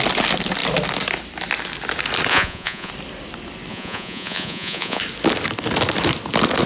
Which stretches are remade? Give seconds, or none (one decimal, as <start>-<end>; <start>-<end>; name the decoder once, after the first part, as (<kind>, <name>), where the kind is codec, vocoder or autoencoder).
2.3-2.9 (vocoder, Vocos); 3.7-5.0